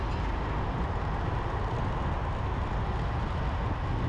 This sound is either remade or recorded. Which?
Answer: recorded